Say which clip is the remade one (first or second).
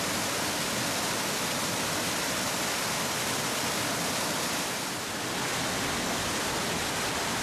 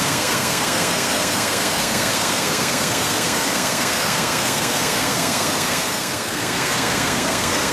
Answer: second